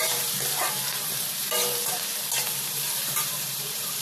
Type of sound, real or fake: fake